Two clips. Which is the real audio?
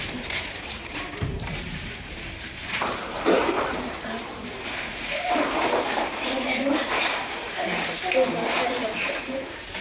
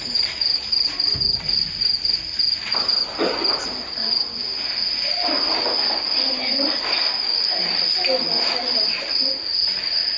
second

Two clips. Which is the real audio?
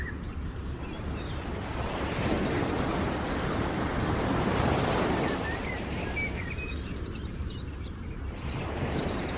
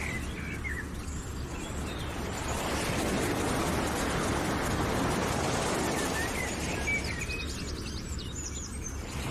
second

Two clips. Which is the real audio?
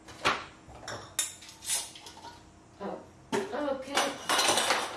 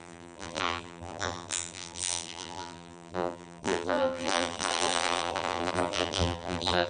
first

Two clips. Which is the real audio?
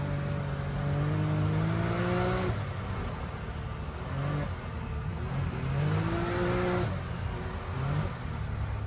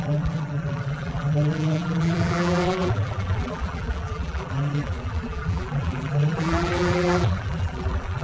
first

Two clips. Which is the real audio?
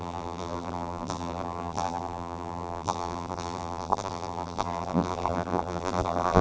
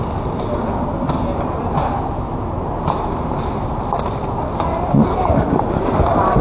second